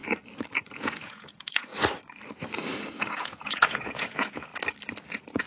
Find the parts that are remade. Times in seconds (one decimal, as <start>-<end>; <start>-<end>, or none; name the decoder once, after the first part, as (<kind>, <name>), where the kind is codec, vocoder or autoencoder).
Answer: 0.6-1.7 (vocoder, Vocos); 2.9-4.5; 5.1-5.5